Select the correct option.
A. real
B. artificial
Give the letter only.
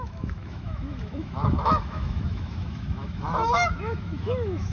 B